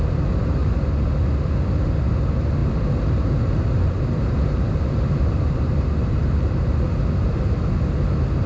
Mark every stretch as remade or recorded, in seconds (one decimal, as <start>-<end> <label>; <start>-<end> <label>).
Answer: 0.0-2.6 recorded; 2.6-7.6 remade; 7.6-8.5 recorded